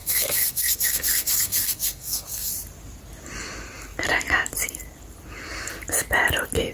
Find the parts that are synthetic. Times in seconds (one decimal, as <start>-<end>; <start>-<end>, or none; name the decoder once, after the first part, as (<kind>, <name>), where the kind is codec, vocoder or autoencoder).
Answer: 0.0-2.5 (codec, SNAC)